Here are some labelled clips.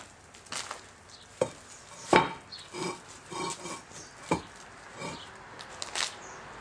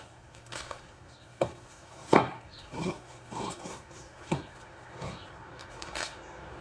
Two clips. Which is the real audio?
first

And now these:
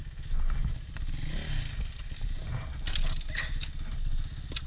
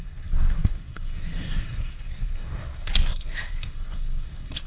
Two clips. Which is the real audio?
first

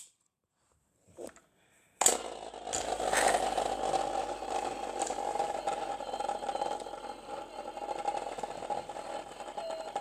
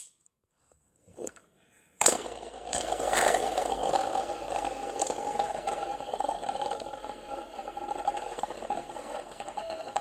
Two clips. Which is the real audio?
first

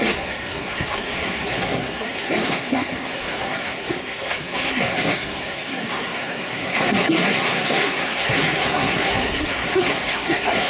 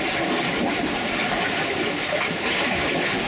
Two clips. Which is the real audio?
second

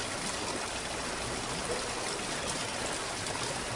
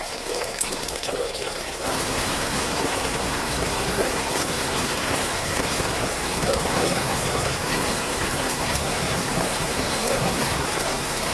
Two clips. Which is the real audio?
first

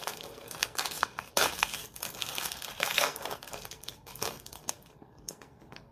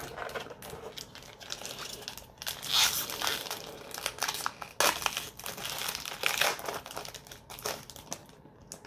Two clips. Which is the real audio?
second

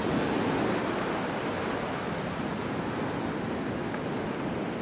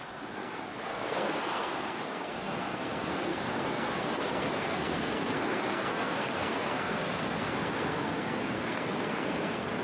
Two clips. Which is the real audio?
first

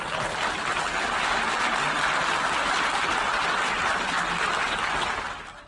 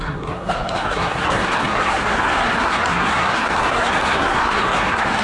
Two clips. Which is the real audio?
first